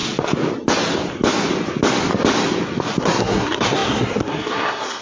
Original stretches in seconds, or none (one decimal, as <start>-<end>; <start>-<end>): 0.0-3.0